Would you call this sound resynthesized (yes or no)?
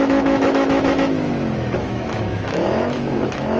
yes